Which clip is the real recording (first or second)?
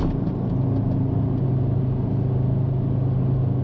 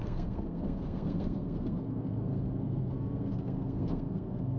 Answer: first